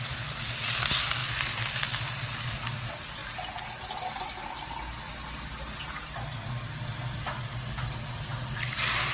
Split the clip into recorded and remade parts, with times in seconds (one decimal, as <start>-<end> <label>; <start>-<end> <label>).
0.0-9.1 recorded